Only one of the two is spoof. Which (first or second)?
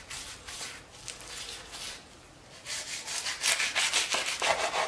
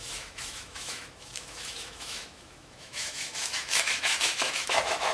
second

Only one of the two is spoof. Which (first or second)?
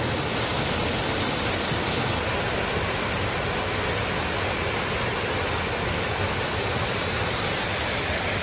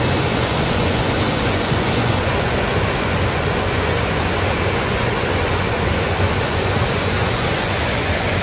second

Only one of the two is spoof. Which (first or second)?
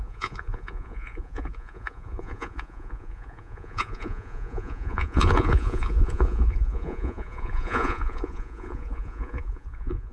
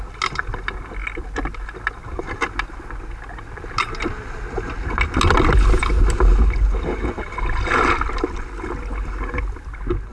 first